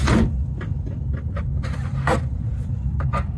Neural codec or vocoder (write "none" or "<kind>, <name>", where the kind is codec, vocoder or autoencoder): none